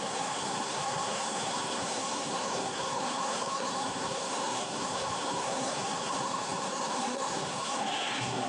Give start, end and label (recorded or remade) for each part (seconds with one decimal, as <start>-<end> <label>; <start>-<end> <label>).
0.0-8.5 remade